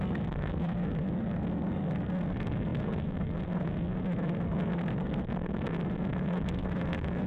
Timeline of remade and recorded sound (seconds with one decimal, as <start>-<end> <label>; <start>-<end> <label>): 0.0-7.3 remade